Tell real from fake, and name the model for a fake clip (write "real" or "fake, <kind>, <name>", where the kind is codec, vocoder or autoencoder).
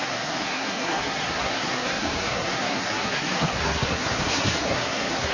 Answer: fake, codec, SNAC